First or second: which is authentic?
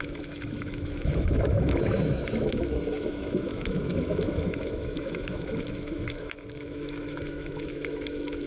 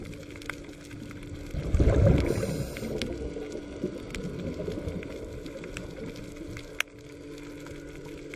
second